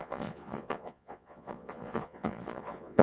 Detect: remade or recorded remade